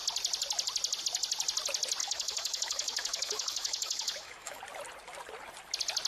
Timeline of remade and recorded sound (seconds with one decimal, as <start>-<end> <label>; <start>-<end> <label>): 0.0-2.0 recorded; 2.0-4.6 remade; 4.6-6.1 recorded

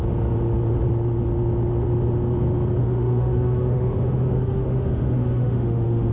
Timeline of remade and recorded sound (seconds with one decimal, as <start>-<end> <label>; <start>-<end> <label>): 0.0-2.8 recorded; 2.8-6.1 remade

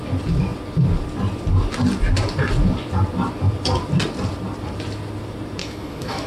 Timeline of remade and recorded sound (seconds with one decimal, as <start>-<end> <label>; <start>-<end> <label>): 0.0-5.6 recorded; 5.6-6.3 remade

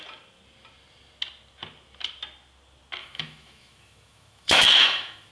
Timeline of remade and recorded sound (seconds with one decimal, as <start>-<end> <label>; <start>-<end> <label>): 0.0-3.0 recorded; 3.0-5.3 remade

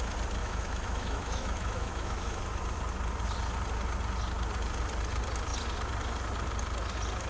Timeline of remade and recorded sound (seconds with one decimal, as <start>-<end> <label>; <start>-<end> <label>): 0.0-0.4 recorded; 0.4-2.4 remade; 2.4-7.3 recorded

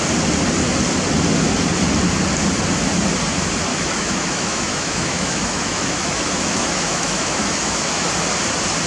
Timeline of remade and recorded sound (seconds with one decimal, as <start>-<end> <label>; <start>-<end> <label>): 0.0-3.7 recorded; 3.7-8.1 remade; 8.1-8.9 recorded